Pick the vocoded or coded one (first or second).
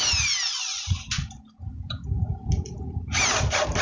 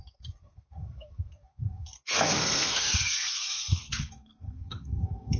second